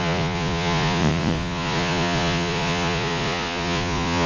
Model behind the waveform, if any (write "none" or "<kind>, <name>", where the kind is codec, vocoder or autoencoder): vocoder, Vocos